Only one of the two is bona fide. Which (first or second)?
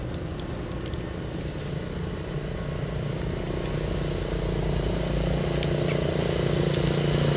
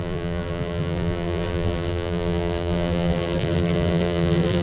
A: first